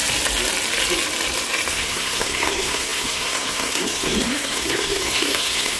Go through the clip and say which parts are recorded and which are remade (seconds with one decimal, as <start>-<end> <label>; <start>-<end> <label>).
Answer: 0.0-1.7 recorded; 1.7-5.8 remade